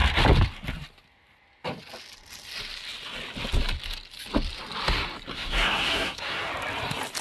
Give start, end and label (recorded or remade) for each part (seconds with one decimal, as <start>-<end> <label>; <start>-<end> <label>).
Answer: 0.0-5.3 recorded; 5.3-6.5 remade; 6.5-7.2 recorded